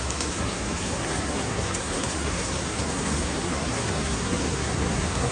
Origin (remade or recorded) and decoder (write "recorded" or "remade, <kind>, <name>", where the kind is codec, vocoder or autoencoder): remade, codec, SNAC